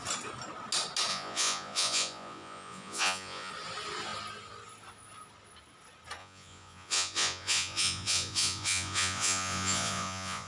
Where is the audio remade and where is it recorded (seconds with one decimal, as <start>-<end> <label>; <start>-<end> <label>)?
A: 0.0-1.1 recorded; 1.1-3.5 remade; 3.5-6.2 recorded; 6.2-10.5 remade